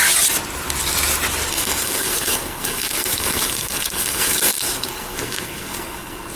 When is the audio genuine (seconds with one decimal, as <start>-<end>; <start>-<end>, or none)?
0.0-1.5